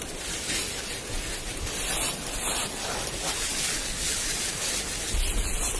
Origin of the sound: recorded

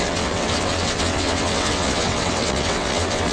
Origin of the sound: remade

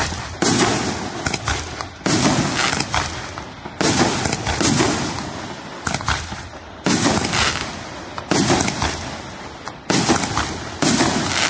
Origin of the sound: recorded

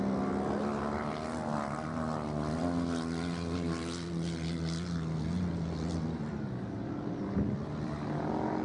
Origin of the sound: recorded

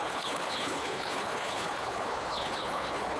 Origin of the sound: remade